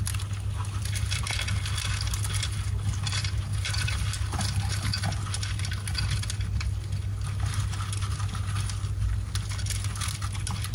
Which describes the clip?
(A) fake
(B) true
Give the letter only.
B